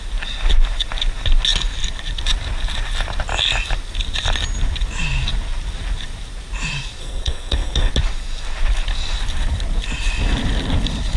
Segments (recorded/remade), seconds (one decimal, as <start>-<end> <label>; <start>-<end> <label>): 0.0-7.0 recorded; 7.0-7.9 remade; 7.9-11.2 recorded